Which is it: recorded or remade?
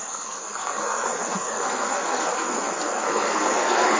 remade